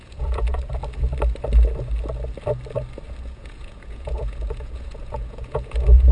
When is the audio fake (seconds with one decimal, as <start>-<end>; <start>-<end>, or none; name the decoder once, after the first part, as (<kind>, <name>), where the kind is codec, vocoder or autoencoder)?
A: 0.0-0.8 (vocoder, Vocos); 3.2-6.1